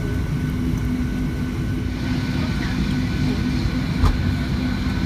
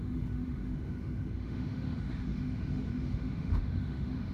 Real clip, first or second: first